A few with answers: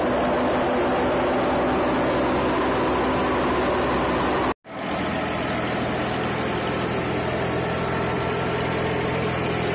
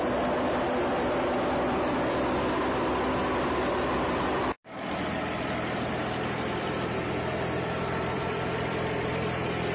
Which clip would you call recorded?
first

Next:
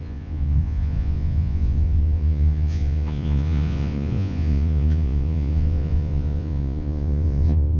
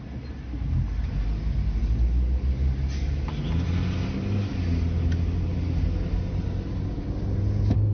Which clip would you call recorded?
second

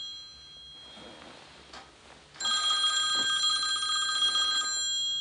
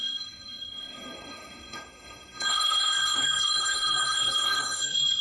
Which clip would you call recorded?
first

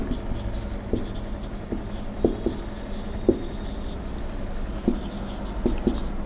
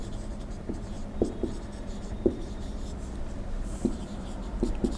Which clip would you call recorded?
first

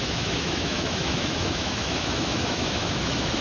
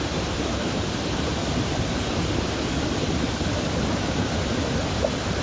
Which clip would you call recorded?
second